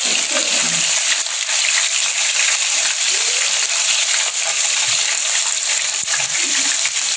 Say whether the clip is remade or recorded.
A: recorded